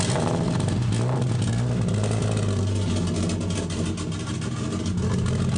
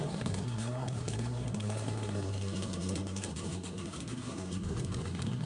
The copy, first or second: second